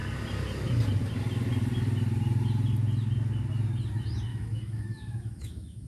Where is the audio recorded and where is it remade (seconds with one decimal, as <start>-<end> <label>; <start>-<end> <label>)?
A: 0.0-4.3 recorded; 4.3-5.9 remade

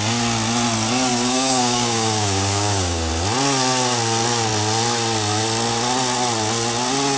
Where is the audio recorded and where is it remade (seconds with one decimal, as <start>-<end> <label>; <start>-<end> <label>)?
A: 0.0-1.1 recorded; 1.1-3.1 remade; 3.1-7.2 recorded

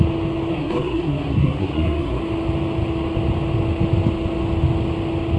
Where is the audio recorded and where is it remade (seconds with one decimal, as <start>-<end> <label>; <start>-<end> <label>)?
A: 0.0-0.5 recorded; 0.5-2.2 remade; 2.2-5.4 recorded

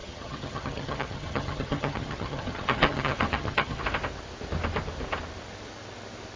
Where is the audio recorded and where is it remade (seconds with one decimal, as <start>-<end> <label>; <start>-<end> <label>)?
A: 0.0-3.8 remade; 3.8-6.4 recorded